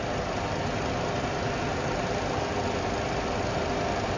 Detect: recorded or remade recorded